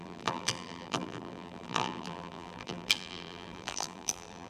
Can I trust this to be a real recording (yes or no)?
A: no